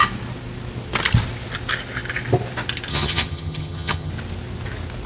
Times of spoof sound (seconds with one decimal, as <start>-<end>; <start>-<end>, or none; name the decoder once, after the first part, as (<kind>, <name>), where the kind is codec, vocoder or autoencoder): 2.9-4.1 (vocoder, HiFi-GAN)